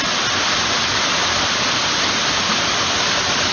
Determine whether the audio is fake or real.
real